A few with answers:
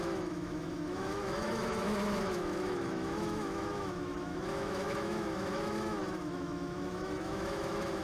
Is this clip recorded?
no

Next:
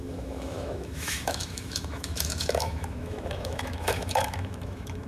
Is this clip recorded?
no